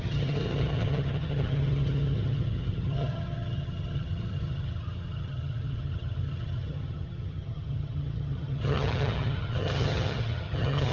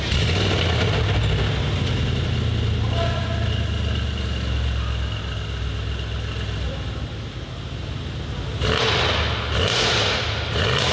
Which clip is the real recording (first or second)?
second